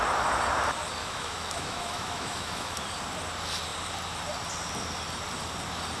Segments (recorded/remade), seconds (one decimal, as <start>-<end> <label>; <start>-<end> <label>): 0.0-1.0 recorded; 1.0-2.8 remade; 2.8-6.0 recorded